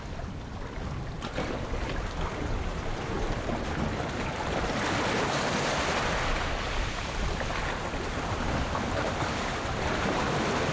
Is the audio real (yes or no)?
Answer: yes